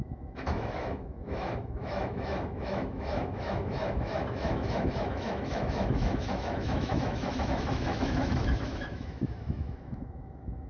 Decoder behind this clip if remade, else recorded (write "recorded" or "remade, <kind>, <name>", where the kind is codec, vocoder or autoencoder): remade, autoencoder, DAC-VAE